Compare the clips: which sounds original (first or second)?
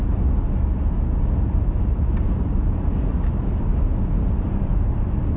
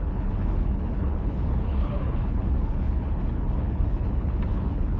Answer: first